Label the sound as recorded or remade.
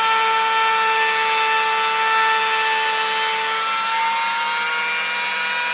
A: recorded